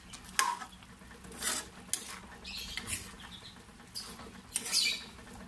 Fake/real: real